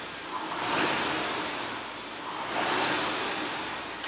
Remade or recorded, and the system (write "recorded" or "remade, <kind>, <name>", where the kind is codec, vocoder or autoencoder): recorded